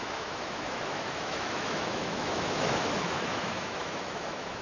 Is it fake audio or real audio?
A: fake